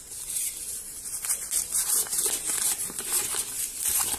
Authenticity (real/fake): real